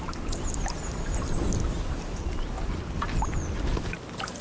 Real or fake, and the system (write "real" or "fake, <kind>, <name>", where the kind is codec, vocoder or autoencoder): real